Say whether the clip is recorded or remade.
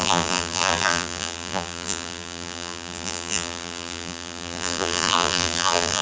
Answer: remade